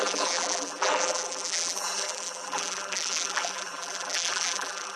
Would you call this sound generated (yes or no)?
yes